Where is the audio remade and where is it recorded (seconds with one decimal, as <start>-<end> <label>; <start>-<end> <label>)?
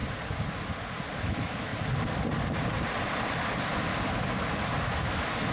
0.0-1.2 recorded; 1.2-1.7 remade; 1.7-5.0 recorded; 5.0-5.5 remade